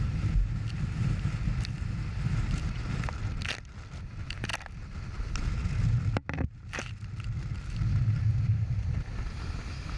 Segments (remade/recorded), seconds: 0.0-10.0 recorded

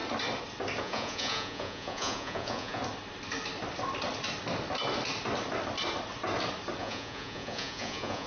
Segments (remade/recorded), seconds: 0.0-0.8 recorded; 0.8-2.8 remade; 2.8-6.8 recorded; 6.8-8.3 remade

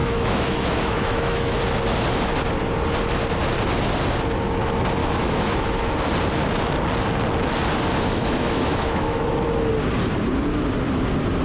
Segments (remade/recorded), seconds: 0.0-1.6 remade; 1.6-5.0 recorded; 5.0-5.7 remade; 5.7-8.2 recorded; 8.2-9.2 remade; 9.2-11.4 recorded

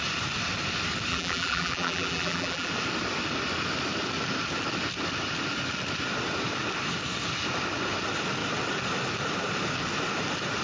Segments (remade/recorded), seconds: 0.0-1.1 recorded; 1.1-2.7 remade; 2.7-10.6 recorded

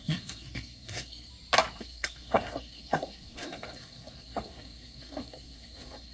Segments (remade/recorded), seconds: 0.0-1.3 remade; 1.3-1.8 recorded; 1.8-6.1 remade

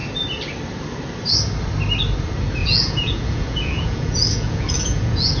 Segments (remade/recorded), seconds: 0.0-2.6 recorded; 2.6-5.4 remade

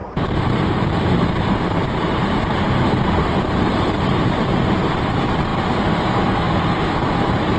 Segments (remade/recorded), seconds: 0.0-4.0 remade; 4.0-7.6 recorded